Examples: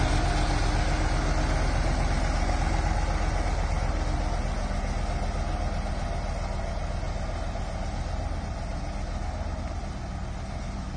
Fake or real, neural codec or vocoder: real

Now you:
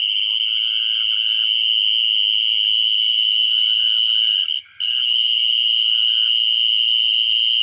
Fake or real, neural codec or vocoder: real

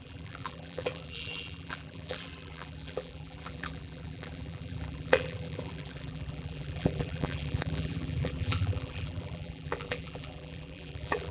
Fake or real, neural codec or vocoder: fake, vocoder, BigVGAN v2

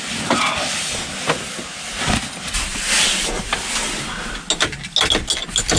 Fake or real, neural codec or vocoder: real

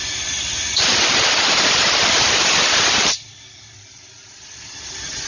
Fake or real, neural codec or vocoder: fake, vocoder, BigVGAN v2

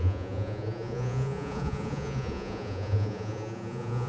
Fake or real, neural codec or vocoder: fake, vocoder, Vocos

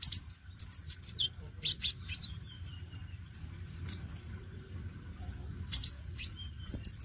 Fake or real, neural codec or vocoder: fake, vocoder, BigVGAN v2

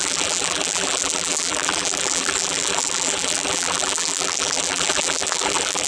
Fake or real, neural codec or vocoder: fake, vocoder, BigVGAN v2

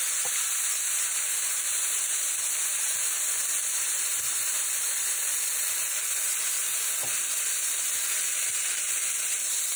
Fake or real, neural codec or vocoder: real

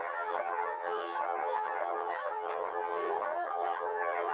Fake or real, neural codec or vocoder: fake, vocoder, HiFi-GAN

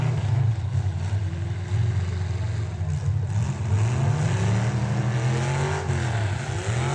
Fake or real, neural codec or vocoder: real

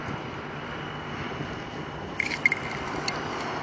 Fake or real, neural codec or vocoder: real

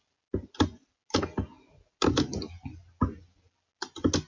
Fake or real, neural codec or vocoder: real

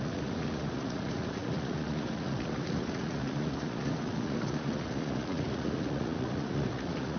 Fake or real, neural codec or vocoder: fake, vocoder, Vocos